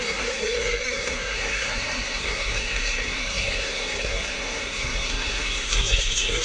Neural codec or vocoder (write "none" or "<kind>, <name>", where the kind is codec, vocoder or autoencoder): codec, SNAC